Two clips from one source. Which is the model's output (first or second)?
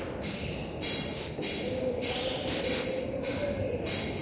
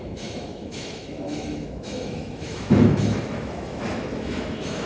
second